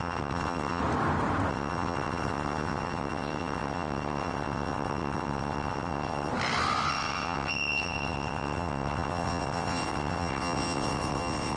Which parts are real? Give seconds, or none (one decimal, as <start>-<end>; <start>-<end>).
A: 0.8-1.5; 6.3-6.9